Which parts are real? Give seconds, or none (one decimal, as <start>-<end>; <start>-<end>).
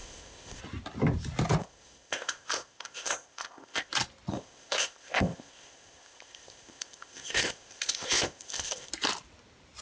0.6-1.6; 3.9-4.3; 8.9-9.8